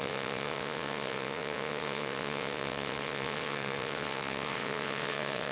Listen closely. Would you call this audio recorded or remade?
remade